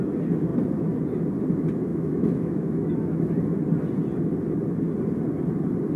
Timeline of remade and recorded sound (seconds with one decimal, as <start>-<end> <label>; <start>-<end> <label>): 0.0-1.9 recorded; 1.9-3.3 remade; 3.3-6.0 recorded

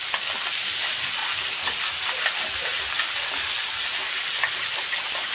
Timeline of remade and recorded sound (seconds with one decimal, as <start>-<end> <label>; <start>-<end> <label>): 0.0-5.3 recorded